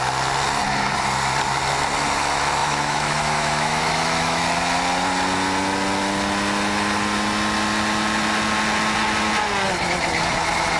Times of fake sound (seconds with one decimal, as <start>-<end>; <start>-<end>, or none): 2.6-4.4